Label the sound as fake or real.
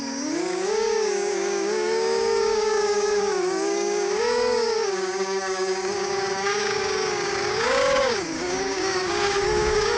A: fake